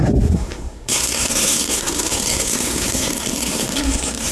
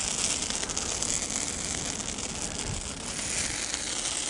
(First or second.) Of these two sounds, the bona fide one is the second